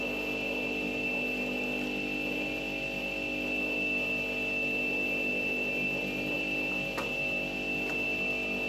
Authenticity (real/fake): real